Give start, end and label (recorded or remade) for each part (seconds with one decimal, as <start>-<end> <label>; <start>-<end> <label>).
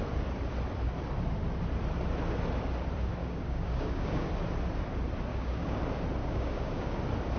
0.0-3.2 recorded; 3.2-4.3 remade; 4.3-5.3 recorded; 5.3-5.8 remade; 5.8-6.2 recorded; 6.2-7.0 remade; 7.0-7.4 recorded